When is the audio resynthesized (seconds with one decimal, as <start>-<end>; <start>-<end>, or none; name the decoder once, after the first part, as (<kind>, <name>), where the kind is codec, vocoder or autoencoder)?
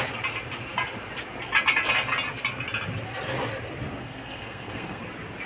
4.0-5.0 (codec, SNAC)